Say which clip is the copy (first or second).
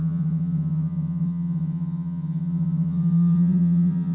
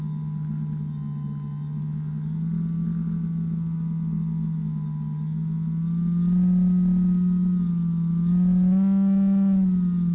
first